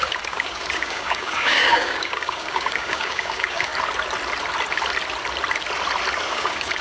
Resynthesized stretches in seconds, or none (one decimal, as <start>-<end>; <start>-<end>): 0.0-3.7; 6.3-6.8